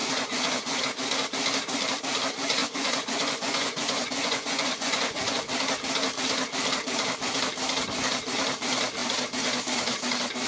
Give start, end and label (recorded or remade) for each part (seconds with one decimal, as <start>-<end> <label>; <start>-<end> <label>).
0.0-0.8 remade; 0.8-2.6 recorded; 2.6-5.4 remade; 5.4-10.5 recorded